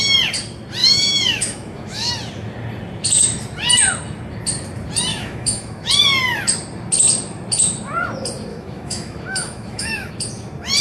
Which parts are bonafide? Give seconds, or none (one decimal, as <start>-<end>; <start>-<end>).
0.0-0.8; 2.1-5.1; 5.9-8.5; 10.1-10.8